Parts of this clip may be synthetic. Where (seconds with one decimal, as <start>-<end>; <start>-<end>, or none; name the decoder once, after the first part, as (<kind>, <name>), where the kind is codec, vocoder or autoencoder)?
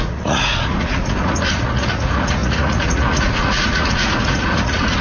0.0-5.0 (vocoder, Vocos)